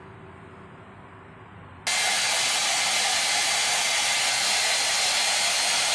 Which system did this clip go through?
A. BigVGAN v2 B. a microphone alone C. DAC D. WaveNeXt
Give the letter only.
B